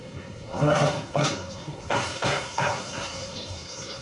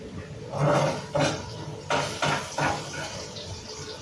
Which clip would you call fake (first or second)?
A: first